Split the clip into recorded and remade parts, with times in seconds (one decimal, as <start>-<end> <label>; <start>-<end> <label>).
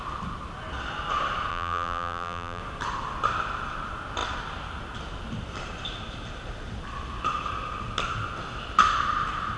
0.0-1.5 recorded; 1.5-2.6 remade; 2.6-9.6 recorded